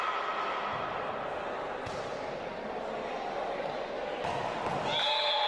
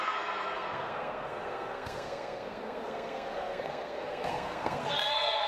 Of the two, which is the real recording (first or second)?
first